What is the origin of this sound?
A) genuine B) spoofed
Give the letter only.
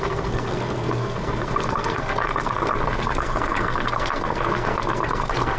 B